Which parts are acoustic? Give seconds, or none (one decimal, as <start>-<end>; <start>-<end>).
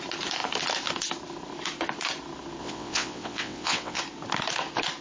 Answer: 0.0-2.6; 4.0-5.0